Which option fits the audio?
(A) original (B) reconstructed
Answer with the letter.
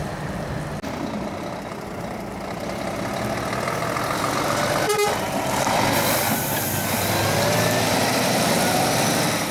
A